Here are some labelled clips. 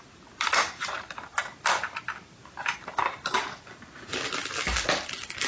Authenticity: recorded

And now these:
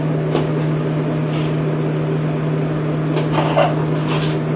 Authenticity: recorded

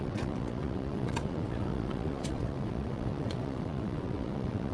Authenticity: remade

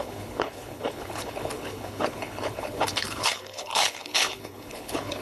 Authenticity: remade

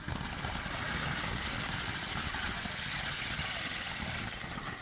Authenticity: remade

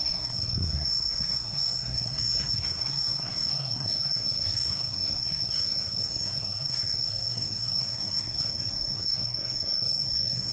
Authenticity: remade